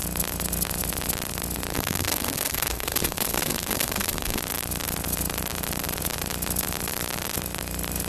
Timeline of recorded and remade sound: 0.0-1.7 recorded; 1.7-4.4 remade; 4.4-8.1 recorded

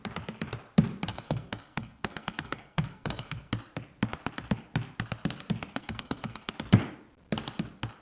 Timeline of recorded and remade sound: 0.0-1.1 recorded; 1.1-3.5 remade; 3.5-5.8 recorded; 5.8-6.5 remade; 6.5-8.0 recorded